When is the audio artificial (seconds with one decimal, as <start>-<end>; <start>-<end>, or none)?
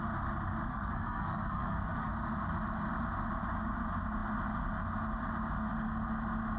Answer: 0.7-2.1